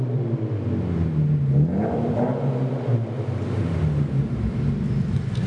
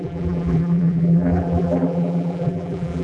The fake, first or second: second